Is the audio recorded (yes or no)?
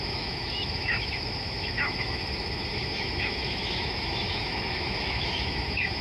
no